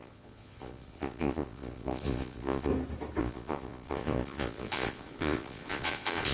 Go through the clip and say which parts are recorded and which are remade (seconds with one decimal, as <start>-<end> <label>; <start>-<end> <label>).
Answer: 0.0-2.7 remade; 2.7-3.2 recorded; 3.2-6.3 remade